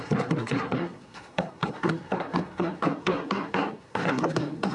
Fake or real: fake